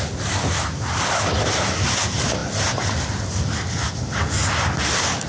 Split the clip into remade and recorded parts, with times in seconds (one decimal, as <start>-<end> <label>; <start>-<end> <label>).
0.0-5.3 recorded

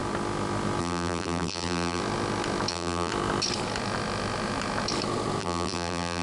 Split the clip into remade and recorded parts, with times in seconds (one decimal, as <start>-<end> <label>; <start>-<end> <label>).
0.0-0.8 recorded; 0.8-2.0 remade; 2.0-2.7 recorded; 2.7-3.1 remade; 3.1-5.4 recorded; 5.4-6.2 remade

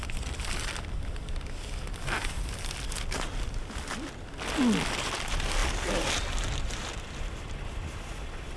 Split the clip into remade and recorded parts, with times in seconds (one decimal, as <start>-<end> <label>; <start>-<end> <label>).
0.0-8.6 recorded

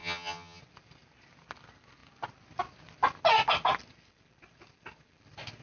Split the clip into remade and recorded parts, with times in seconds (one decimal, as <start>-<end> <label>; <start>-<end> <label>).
0.0-0.6 remade; 0.6-5.6 recorded

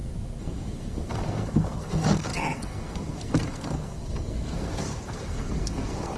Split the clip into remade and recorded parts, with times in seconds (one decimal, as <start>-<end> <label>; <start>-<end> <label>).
0.0-6.2 remade

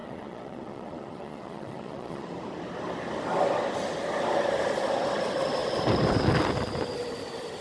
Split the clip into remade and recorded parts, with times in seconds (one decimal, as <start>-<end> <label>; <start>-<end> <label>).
0.0-2.3 remade; 2.3-7.6 recorded

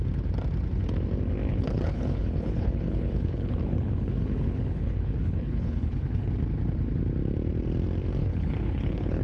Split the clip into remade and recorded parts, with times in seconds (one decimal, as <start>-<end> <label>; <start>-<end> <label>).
0.0-1.5 recorded; 1.5-6.3 remade; 6.3-8.2 recorded; 8.2-9.2 remade